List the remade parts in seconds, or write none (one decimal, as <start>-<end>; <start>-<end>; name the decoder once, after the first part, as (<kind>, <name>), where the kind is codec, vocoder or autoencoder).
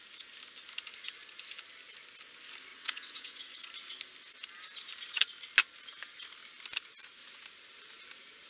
2.7-3.7 (vocoder, WaveNeXt)